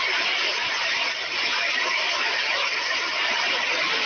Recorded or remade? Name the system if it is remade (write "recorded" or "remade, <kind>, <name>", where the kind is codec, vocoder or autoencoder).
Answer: remade, vocoder, BigVGAN v2